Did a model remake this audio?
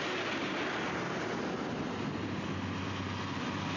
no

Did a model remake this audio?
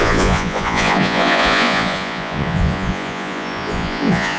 yes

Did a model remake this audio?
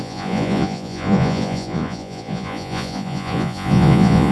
yes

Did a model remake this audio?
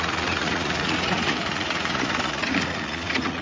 yes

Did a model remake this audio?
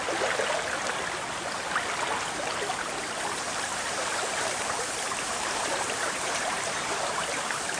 no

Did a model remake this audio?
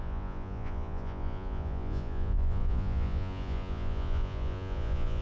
yes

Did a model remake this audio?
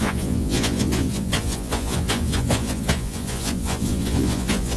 yes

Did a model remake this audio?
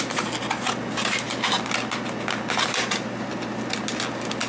no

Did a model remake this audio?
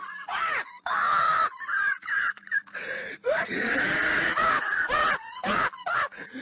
yes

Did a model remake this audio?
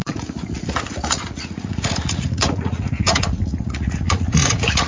yes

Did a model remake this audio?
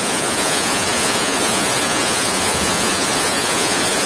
yes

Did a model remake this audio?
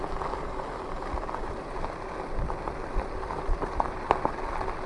no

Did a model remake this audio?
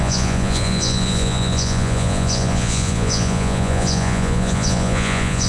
yes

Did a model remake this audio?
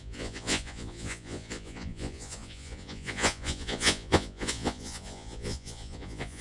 yes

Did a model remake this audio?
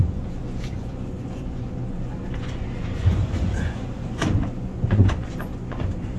yes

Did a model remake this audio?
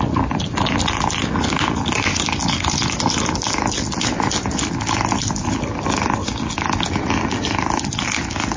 no